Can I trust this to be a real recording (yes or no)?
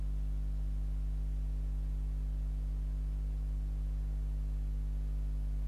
yes